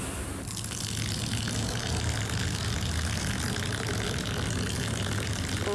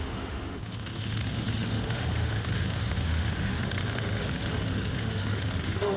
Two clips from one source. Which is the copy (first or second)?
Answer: second